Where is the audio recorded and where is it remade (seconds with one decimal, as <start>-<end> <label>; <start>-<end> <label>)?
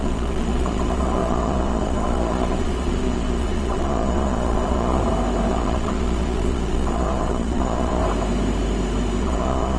0.0-5.0 remade; 5.0-5.5 recorded; 5.5-8.0 remade; 8.0-9.2 recorded; 9.2-9.8 remade